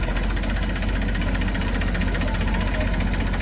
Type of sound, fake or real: real